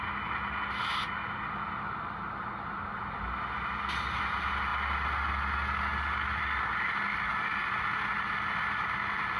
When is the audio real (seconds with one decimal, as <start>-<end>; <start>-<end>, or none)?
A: 0.0-9.4